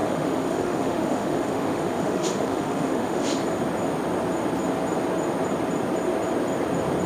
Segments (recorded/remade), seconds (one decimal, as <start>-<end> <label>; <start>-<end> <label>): 0.0-3.4 remade; 3.4-7.1 recorded